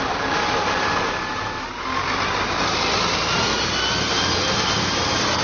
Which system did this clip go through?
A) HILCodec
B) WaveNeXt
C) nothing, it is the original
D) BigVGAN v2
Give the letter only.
C